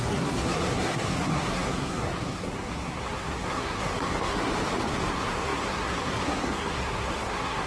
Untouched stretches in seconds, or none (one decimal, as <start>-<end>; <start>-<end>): 4.5-5.1